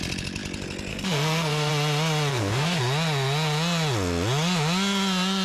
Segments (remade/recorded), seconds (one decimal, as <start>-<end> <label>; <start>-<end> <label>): 0.0-0.9 recorded; 0.9-1.7 remade; 1.7-2.3 recorded; 2.3-2.8 remade; 2.8-5.4 recorded